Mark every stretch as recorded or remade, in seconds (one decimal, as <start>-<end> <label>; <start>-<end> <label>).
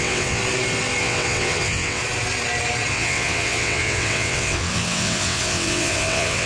0.0-0.4 remade; 0.4-1.0 recorded; 1.0-2.0 remade; 2.0-2.9 recorded; 2.9-6.5 remade